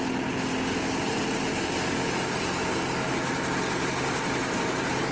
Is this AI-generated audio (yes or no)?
no